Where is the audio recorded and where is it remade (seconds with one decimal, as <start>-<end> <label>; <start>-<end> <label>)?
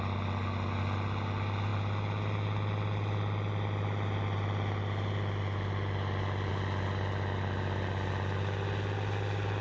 0.0-9.6 recorded